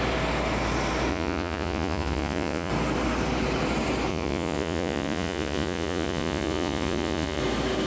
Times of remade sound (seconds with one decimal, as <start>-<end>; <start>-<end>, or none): 1.1-2.7; 4.1-7.4